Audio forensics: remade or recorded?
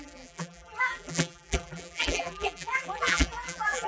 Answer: remade